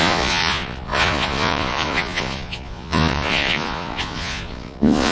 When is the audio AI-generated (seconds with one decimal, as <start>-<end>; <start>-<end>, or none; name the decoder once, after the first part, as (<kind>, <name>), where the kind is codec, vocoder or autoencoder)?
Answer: 0.0-5.1 (vocoder, Vocos)